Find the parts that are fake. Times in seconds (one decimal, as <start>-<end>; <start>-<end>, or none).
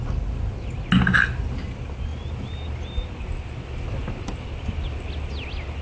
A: none